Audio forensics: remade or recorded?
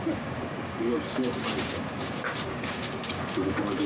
remade